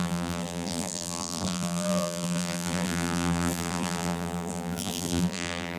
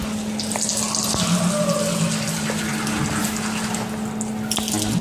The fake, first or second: first